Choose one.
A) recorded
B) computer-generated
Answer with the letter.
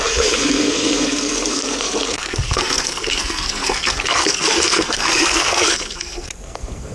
B